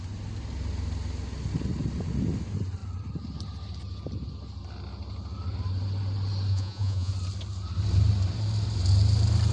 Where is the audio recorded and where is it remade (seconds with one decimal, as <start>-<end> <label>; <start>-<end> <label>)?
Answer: 0.0-6.5 recorded; 6.5-7.1 remade; 7.1-9.5 recorded